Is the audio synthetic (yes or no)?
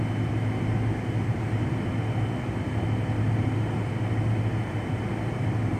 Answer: no